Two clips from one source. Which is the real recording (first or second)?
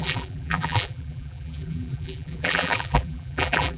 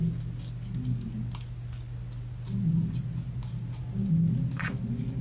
second